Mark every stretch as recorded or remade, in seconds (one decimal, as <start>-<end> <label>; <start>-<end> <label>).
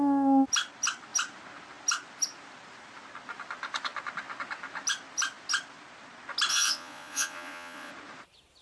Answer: 0.0-6.5 recorded; 6.5-7.9 remade; 7.9-8.6 recorded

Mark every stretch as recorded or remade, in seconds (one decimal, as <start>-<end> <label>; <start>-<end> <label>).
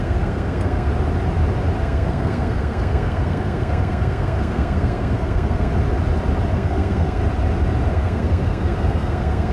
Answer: 0.0-0.9 remade; 0.9-1.8 recorded; 1.8-5.7 remade; 5.7-6.5 recorded; 6.5-7.2 remade; 7.2-7.9 recorded; 7.9-9.5 remade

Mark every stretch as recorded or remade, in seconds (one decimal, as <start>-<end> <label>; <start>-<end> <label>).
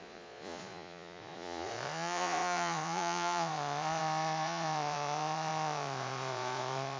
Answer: 0.0-7.0 remade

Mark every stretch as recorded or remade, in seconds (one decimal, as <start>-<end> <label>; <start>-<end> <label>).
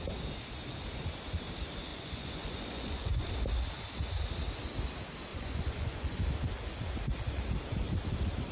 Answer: 0.0-1.9 recorded; 1.9-3.3 remade; 3.3-5.3 recorded; 5.3-6.2 remade; 6.2-8.5 recorded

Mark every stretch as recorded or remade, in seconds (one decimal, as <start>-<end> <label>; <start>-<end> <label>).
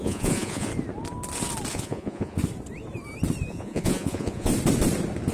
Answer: 0.0-0.7 remade; 0.7-1.7 recorded; 1.7-2.4 remade; 2.4-3.5 recorded; 3.5-4.5 remade; 4.5-5.3 recorded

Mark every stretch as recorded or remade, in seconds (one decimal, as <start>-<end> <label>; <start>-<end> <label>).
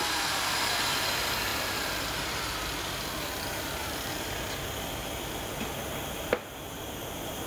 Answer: 0.0-1.5 recorded; 1.5-2.4 remade; 2.4-3.8 recorded; 3.8-4.4 remade; 4.4-5.0 recorded; 5.0-5.7 remade; 5.7-7.5 recorded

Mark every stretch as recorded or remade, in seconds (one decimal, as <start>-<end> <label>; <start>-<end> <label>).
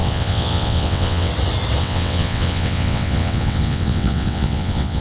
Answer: 0.0-1.3 remade; 1.3-1.8 recorded; 1.8-5.0 remade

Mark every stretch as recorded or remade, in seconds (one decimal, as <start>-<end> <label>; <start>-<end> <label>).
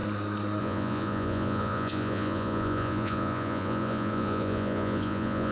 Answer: 0.0-0.6 recorded; 0.6-5.5 remade